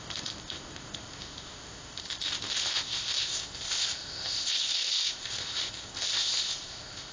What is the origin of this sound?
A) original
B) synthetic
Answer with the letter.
B